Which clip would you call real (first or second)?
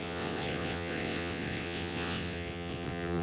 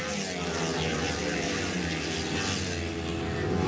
second